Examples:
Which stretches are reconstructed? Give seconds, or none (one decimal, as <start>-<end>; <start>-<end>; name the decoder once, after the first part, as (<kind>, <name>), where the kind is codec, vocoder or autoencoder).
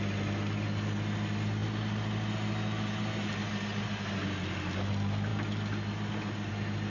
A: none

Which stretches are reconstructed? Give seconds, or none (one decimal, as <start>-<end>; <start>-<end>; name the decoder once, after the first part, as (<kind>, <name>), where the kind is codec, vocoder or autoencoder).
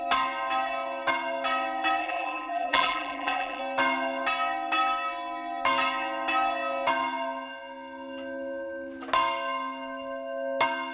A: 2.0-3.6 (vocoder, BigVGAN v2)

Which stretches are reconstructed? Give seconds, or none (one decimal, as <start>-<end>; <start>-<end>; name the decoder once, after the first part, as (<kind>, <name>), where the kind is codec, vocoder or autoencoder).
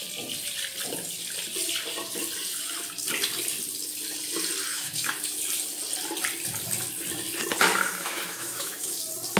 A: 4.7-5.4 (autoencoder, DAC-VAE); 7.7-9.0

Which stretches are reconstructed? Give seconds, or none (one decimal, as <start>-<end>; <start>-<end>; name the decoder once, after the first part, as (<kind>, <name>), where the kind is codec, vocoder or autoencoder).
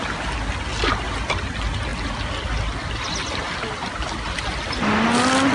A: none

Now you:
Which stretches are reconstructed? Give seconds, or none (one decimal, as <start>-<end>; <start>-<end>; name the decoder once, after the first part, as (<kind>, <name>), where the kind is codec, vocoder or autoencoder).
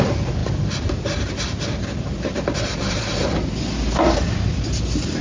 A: none